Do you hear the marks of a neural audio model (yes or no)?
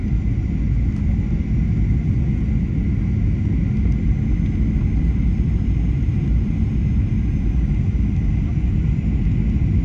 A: no